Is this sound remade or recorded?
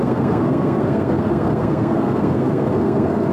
remade